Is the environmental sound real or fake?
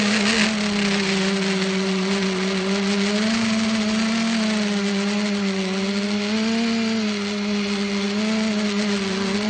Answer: real